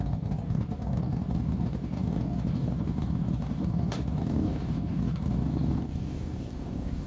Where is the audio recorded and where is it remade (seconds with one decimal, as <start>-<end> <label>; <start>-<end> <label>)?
0.0-7.1 remade